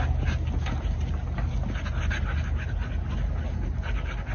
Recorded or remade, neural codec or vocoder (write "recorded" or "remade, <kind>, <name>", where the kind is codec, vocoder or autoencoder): recorded